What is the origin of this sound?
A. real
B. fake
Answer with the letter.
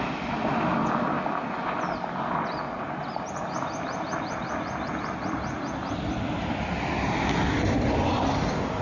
A